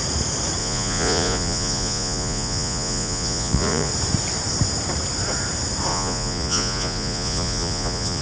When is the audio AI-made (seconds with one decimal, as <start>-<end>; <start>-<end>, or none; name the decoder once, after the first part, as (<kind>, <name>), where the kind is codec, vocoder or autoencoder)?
0.6-3.9 (vocoder, Vocos); 5.9-8.2